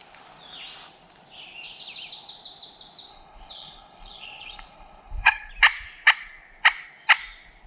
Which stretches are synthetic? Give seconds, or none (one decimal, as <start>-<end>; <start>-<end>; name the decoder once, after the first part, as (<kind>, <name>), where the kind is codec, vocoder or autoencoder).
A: 3.1-5.5 (codec, HILCodec)